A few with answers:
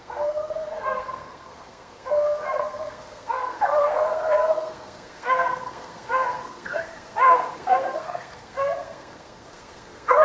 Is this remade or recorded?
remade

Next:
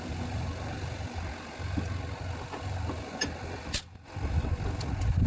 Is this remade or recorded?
recorded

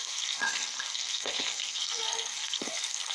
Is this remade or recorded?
remade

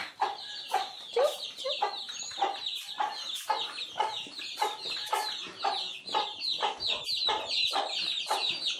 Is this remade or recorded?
recorded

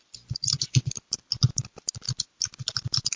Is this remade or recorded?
recorded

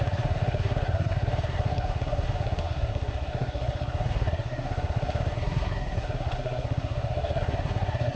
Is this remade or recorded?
remade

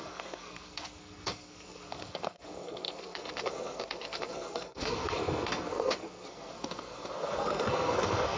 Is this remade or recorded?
remade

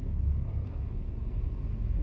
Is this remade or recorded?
remade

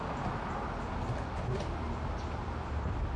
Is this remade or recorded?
recorded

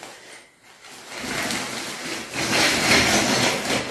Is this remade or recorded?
recorded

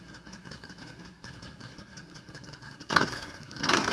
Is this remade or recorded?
remade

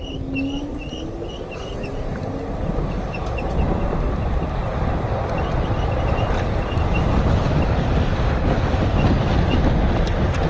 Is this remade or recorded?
recorded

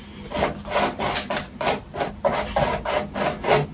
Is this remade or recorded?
recorded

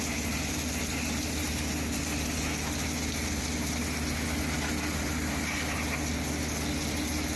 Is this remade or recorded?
recorded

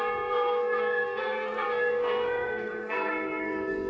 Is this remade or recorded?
remade